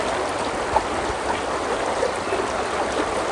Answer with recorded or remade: recorded